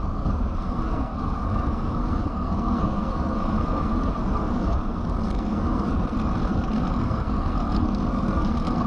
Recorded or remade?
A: remade